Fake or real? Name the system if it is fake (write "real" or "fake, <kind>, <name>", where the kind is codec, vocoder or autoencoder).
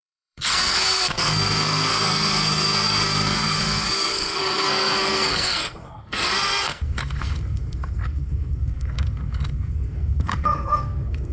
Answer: fake, codec, SNAC